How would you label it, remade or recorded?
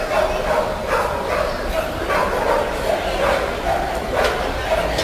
recorded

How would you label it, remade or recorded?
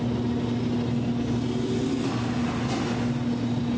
recorded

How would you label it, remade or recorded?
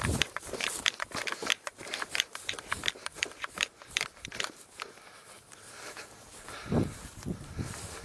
remade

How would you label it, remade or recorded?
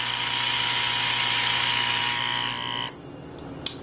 recorded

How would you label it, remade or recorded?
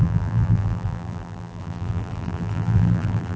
remade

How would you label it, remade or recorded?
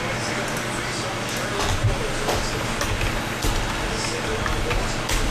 recorded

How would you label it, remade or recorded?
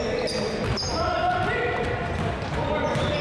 recorded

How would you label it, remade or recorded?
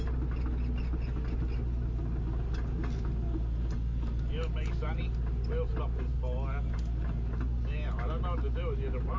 recorded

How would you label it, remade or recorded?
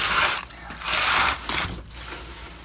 recorded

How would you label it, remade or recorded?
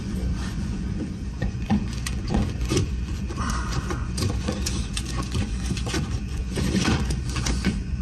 remade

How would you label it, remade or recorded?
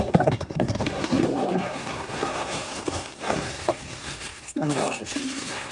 remade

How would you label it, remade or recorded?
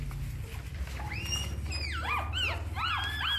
recorded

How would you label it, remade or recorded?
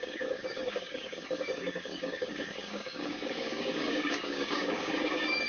remade